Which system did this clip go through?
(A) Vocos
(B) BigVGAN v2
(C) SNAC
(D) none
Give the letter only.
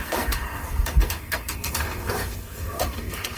C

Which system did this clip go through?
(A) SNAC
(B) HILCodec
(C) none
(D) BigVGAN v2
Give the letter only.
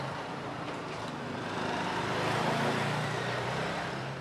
D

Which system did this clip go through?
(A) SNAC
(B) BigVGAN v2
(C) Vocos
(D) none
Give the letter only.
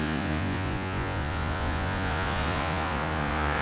C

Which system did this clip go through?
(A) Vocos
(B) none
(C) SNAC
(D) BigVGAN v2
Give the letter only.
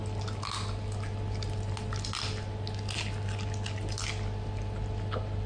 B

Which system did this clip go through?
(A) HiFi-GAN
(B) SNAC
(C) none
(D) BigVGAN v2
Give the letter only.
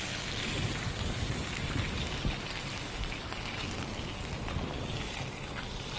C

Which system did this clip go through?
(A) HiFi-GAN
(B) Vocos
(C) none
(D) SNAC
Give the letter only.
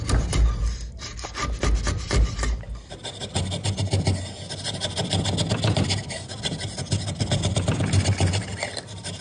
C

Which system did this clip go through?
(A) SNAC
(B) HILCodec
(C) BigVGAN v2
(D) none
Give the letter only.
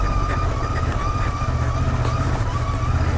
D